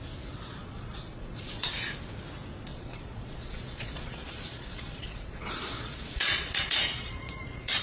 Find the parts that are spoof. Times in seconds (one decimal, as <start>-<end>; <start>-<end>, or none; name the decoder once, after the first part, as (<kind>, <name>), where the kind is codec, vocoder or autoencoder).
0.6-1.7 (vocoder, Vocos); 2.7-7.8